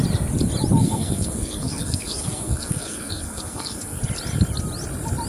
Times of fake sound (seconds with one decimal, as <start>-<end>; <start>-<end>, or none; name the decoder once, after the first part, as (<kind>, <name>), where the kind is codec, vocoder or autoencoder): 0.8-4.0 (codec, SNAC)